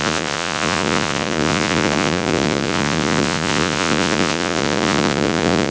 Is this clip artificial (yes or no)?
yes